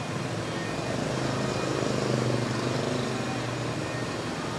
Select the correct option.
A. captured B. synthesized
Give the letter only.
A